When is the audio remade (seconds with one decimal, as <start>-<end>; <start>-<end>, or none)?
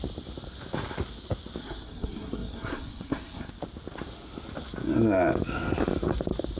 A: 1.6-3.5